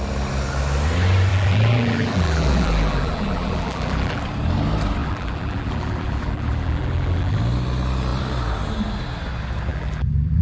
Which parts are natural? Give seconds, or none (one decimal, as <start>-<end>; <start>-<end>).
0.0-1.3; 4.2-5.0; 7.4-9.7